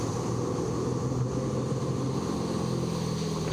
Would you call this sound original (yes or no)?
yes